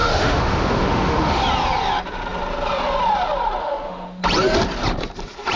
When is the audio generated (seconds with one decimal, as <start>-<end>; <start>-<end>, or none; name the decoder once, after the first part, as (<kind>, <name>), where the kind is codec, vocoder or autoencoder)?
0.0-1.4 (autoencoder, DAC-VAE); 3.6-4.2